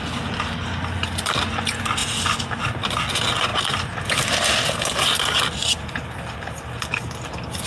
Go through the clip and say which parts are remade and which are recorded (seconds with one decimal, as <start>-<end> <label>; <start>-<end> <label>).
0.0-7.7 recorded